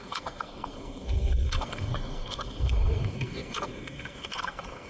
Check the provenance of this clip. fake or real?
fake